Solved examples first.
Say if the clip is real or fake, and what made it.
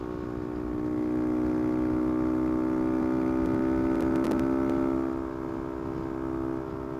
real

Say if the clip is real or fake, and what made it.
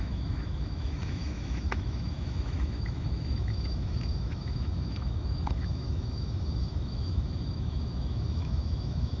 fake, autoencoder, DAC-VAE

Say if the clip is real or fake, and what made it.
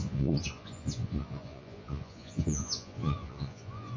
fake, vocoder, Vocos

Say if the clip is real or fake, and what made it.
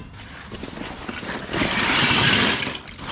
real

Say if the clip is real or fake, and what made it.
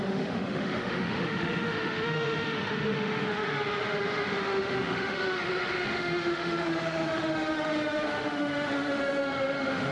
fake, autoencoder, DAC-VAE